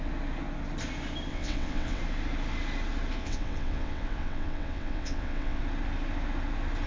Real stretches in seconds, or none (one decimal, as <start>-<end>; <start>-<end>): 0.0-1.3; 2.0-3.2; 5.6-6.9